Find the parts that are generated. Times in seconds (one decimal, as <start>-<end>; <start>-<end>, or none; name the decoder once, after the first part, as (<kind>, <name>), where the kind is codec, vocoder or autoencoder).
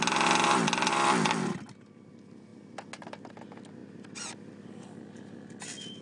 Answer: none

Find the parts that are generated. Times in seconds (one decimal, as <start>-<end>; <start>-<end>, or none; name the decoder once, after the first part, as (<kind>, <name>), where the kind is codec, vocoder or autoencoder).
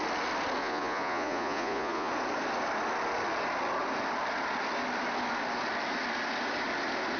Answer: 0.6-2.1 (vocoder, Vocos)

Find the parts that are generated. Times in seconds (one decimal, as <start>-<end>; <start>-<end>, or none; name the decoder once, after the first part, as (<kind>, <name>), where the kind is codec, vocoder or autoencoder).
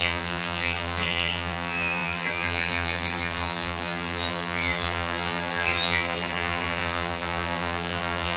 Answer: 0.0-8.4 (vocoder, BigVGAN v2)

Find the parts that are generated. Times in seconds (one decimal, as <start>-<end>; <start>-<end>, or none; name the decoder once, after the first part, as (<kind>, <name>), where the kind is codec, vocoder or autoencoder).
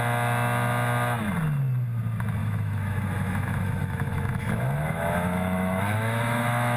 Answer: 2.4-6.8 (autoencoder, DAC-VAE)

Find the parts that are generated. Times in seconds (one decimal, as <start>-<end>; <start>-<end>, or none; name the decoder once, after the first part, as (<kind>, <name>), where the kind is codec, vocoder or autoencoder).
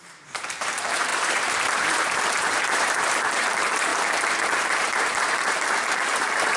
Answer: 0.0-3.9 (vocoder, BigVGAN v2); 4.7-6.6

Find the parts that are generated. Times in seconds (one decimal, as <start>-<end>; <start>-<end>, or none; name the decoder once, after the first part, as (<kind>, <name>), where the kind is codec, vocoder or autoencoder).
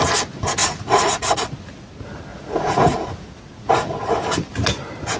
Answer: 0.6-1.4 (vocoder, Vocos); 2.3-3.7